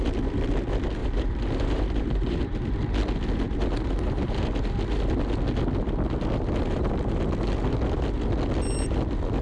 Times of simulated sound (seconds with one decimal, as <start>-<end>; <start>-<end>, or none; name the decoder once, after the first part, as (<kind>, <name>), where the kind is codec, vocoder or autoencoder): 1.0-2.7 (vocoder, BigVGAN v2)